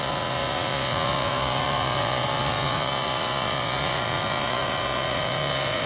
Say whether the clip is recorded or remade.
remade